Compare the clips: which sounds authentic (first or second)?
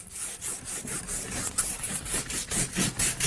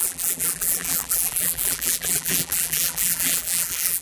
first